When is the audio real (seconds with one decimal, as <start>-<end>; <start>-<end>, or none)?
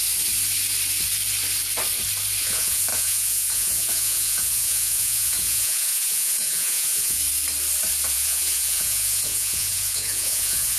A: 0.0-2.4; 7.2-8.1